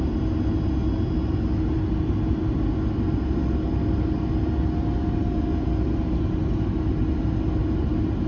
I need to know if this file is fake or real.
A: real